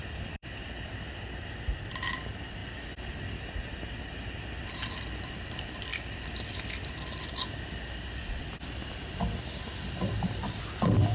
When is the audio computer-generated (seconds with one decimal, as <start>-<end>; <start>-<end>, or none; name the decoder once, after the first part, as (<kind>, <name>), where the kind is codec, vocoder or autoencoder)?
0.0-2.6 (vocoder, BigVGAN v2); 4.7-11.1